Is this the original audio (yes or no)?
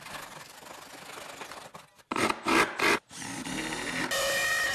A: yes